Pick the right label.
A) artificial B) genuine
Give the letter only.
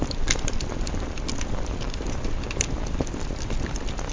B